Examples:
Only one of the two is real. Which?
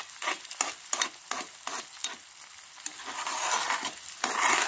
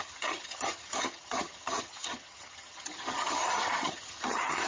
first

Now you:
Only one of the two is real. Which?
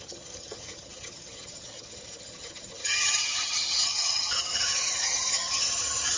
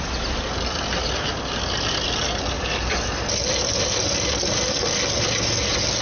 second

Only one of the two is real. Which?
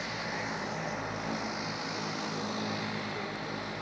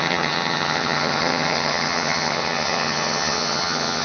first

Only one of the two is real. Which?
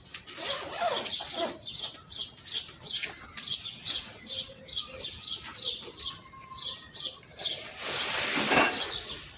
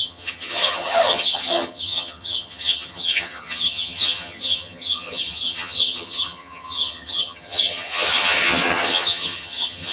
first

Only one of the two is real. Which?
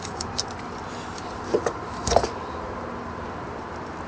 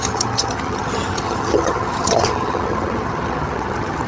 first